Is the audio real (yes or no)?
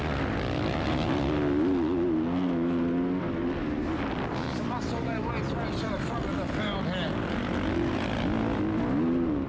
yes